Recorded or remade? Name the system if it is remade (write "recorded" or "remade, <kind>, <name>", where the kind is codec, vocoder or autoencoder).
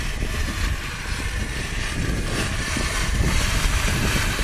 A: remade, vocoder, BigVGAN v2